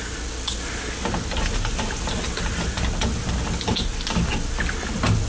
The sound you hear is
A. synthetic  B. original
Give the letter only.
B